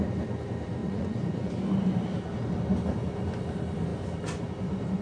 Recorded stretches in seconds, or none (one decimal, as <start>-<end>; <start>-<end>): 0.0-0.8; 1.5-5.0